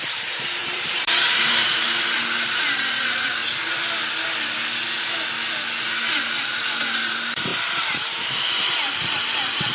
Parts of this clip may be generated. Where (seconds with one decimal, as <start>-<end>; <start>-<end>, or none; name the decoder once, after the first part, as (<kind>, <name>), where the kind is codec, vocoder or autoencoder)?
0.0-3.4 (vocoder, BigVGAN v2); 6.4-9.7